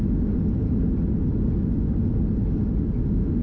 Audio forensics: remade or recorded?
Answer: recorded